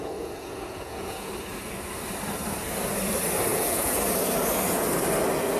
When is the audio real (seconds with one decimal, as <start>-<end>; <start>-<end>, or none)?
0.0-0.7; 1.3-3.5; 4.0-5.6